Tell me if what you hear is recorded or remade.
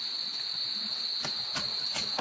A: recorded